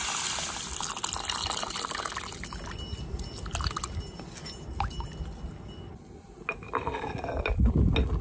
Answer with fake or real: real